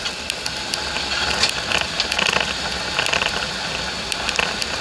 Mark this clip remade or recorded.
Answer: recorded